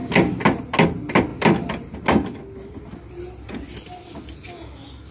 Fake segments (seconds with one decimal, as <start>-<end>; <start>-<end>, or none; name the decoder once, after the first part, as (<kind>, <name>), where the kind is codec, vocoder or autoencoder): none

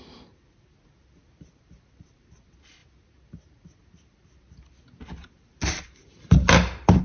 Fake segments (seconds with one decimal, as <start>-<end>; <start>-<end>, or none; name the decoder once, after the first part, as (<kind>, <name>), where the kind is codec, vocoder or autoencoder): none

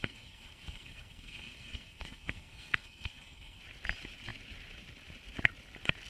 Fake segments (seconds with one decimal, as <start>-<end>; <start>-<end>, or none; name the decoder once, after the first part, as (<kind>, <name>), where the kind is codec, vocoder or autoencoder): 0.0-3.6 (codec, SNAC)

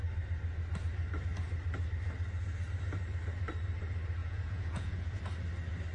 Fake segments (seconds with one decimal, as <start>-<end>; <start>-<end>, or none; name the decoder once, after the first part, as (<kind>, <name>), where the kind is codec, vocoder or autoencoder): 4.2-5.2 (vocoder, Vocos)

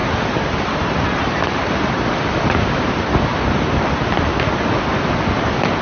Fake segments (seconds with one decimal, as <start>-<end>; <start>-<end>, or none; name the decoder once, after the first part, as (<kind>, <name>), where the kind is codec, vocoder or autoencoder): 0.0-2.9 (vocoder, BigVGAN v2); 3.3-4.2